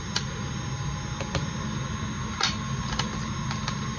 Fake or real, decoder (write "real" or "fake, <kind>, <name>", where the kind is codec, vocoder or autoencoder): real